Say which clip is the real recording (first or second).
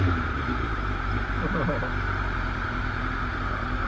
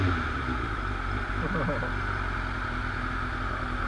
second